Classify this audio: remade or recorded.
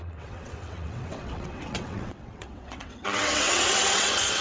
remade